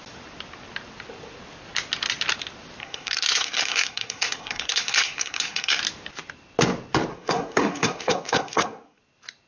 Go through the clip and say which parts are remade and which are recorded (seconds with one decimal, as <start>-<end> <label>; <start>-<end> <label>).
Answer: 0.0-2.8 recorded; 2.8-5.8 remade; 5.8-7.1 recorded; 7.1-9.0 remade; 9.0-9.5 recorded